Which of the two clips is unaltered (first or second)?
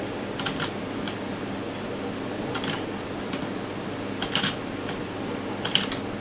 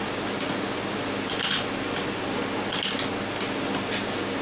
second